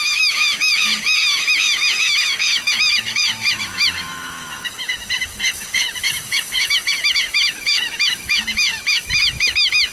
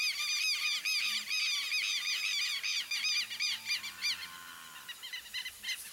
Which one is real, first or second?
second